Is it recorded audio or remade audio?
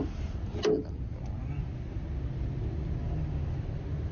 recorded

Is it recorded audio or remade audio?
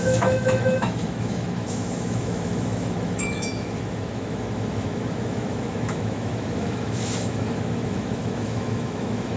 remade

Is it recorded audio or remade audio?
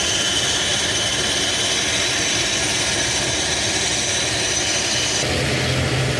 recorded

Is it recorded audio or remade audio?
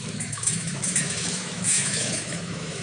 remade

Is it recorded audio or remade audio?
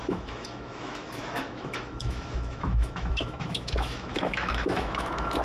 remade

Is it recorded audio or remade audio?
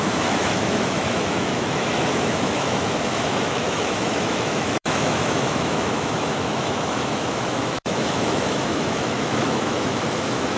remade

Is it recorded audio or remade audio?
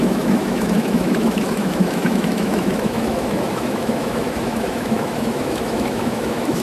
remade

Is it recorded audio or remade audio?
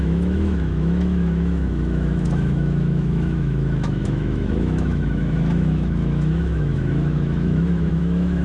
remade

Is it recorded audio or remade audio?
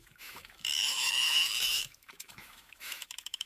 remade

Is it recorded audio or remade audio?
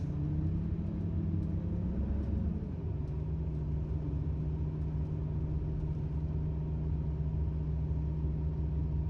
recorded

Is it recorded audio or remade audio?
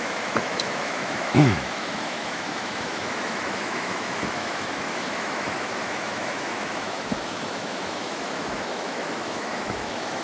remade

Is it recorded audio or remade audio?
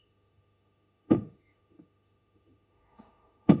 remade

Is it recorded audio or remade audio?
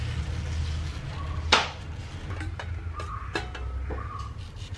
recorded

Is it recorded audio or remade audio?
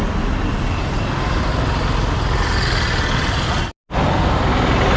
recorded